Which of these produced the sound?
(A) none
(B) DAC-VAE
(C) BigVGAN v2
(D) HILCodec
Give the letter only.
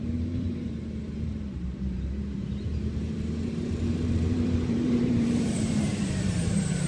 C